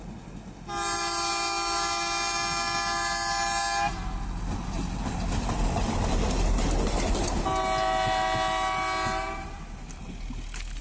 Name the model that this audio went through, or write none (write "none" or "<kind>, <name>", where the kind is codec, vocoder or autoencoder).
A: none